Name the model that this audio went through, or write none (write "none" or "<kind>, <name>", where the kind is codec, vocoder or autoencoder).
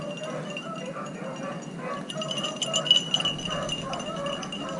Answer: none